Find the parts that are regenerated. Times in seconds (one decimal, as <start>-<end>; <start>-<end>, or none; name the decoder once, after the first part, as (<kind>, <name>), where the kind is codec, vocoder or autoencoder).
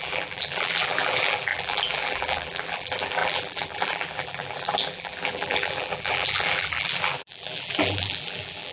0.0-8.7 (vocoder, BigVGAN v2)